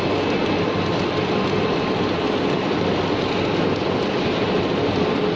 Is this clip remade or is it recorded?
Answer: recorded